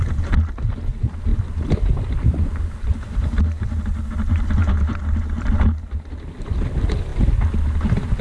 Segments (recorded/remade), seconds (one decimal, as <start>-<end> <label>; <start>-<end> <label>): 0.0-8.2 recorded